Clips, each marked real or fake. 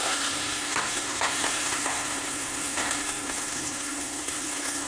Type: fake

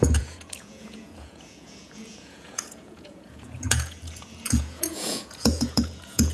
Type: fake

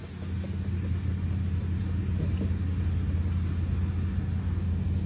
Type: real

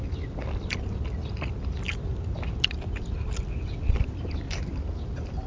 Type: real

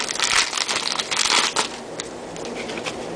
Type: real